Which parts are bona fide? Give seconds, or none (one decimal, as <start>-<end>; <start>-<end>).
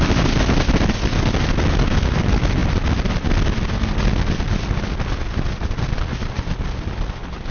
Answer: 0.0-7.5